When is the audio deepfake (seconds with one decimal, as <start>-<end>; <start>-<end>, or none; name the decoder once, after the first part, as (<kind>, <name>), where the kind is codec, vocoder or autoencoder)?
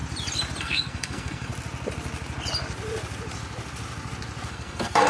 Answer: 0.6-1.5 (codec, SNAC); 4.5-5.1